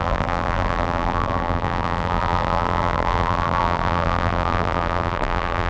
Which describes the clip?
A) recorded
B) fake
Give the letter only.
B